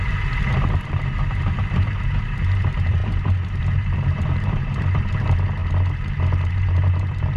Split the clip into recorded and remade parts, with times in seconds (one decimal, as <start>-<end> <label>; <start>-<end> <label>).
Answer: 0.0-5.6 remade; 5.6-6.5 recorded; 6.5-7.4 remade

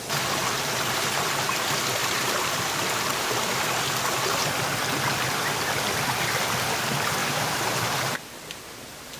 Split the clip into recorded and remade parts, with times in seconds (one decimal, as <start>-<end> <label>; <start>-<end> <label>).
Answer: 0.0-2.0 recorded; 2.0-2.6 remade; 2.6-7.2 recorded; 7.2-8.3 remade; 8.3-9.2 recorded

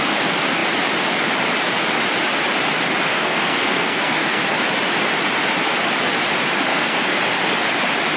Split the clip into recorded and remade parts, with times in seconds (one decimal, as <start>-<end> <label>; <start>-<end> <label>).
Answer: 0.0-3.1 recorded; 3.1-4.4 remade; 4.4-6.7 recorded; 6.7-7.2 remade; 7.2-8.2 recorded

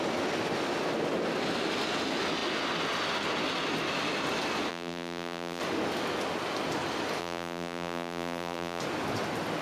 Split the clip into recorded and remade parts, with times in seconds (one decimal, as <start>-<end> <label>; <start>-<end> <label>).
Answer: 0.0-4.7 recorded; 4.7-5.6 remade; 5.6-7.2 recorded; 7.2-8.8 remade; 8.8-9.6 recorded

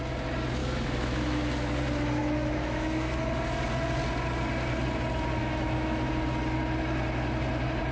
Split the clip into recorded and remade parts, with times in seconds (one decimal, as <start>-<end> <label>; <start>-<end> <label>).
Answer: 0.0-0.6 recorded; 0.6-1.7 remade; 1.7-2.2 recorded; 2.2-3.2 remade; 3.2-5.4 recorded; 5.4-6.1 remade; 6.1-7.9 recorded

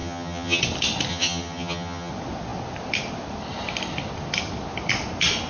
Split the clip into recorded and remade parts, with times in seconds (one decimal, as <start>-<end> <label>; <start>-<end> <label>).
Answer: 0.0-0.6 remade; 0.6-1.1 recorded; 1.1-2.1 remade; 2.1-5.5 recorded

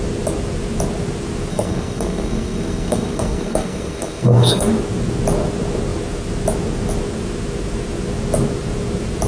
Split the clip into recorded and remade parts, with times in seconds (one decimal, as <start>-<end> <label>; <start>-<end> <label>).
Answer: 0.0-1.5 recorded; 1.5-4.7 remade; 4.7-9.3 recorded